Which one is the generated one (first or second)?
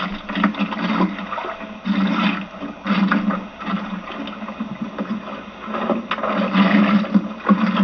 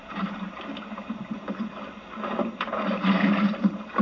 second